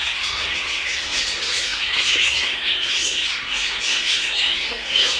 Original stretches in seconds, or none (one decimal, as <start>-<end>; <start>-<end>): none